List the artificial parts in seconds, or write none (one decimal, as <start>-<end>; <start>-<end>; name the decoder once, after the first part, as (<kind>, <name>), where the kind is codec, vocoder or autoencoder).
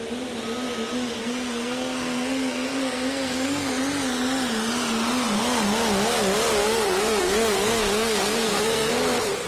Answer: 1.2-3.7 (codec, SNAC); 6.6-8.9